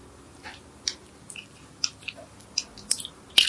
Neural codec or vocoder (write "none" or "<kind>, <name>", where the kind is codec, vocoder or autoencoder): none